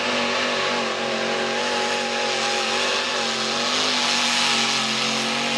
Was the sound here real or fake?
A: real